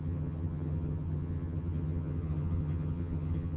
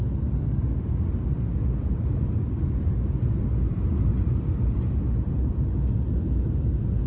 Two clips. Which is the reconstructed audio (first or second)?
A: first